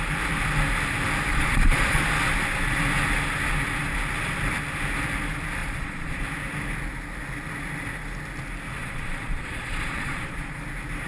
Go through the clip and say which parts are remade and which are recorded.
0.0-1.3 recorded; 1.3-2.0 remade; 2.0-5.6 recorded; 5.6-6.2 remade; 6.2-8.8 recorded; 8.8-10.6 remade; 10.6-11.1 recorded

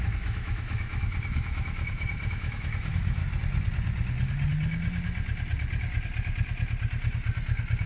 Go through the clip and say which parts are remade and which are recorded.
0.0-3.2 remade; 3.2-7.9 recorded

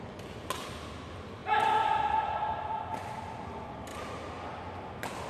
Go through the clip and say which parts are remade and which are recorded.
0.0-5.3 recorded

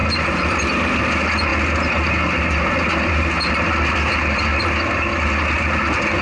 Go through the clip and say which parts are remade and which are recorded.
0.0-6.2 recorded

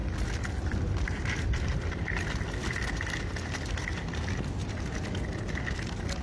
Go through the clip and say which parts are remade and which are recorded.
0.0-6.2 recorded

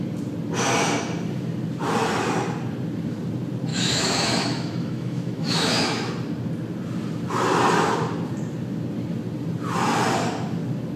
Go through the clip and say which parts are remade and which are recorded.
0.0-3.7 recorded; 3.7-6.1 remade; 6.1-11.0 recorded

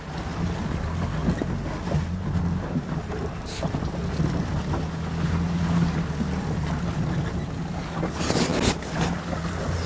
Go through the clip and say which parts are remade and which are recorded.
0.0-9.9 recorded

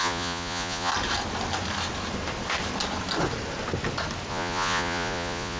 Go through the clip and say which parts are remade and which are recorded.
0.0-0.9 remade; 0.9-4.3 recorded; 4.3-5.6 remade